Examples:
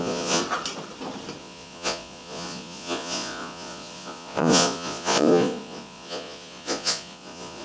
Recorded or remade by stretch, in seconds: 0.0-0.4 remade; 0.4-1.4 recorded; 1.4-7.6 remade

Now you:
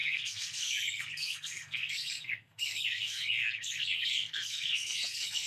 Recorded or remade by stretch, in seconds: 0.0-5.5 remade

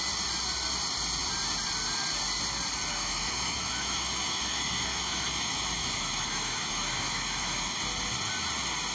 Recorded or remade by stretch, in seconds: 0.0-2.9 recorded; 2.9-7.8 remade; 7.8-8.9 recorded

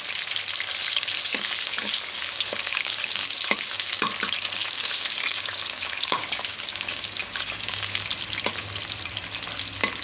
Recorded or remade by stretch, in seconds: 0.0-0.8 recorded; 0.8-3.9 remade; 3.9-4.6 recorded; 4.6-8.0 remade; 8.0-10.0 recorded

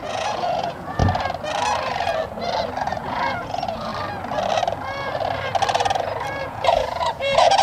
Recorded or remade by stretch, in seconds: 0.0-1.0 remade; 1.0-2.8 recorded; 2.8-3.9 remade; 3.9-6.4 recorded; 6.4-7.6 remade